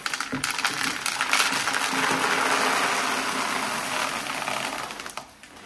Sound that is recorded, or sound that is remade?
recorded